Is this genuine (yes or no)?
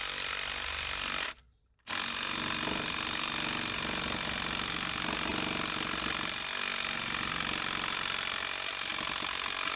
yes